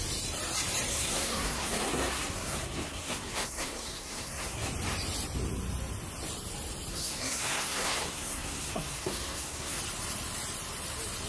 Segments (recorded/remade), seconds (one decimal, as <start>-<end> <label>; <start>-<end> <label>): 0.0-0.9 recorded; 0.9-4.7 remade; 4.7-6.9 recorded; 6.9-9.8 remade; 9.8-11.3 recorded